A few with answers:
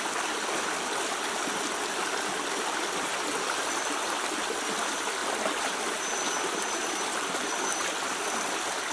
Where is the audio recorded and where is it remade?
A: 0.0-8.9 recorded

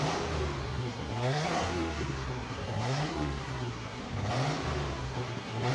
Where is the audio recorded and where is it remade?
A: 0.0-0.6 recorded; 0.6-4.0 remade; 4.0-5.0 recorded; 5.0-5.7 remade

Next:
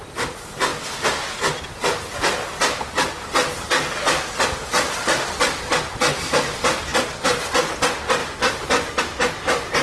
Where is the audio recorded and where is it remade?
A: 0.0-9.8 recorded